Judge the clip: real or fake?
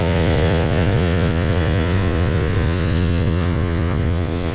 fake